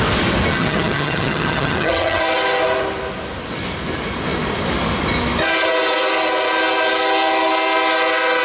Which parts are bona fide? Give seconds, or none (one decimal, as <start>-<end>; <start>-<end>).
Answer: 0.0-0.5; 2.2-8.4